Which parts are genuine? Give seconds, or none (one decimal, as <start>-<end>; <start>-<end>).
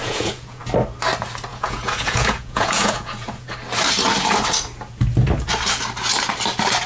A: 0.6-1.5; 3.5-6.9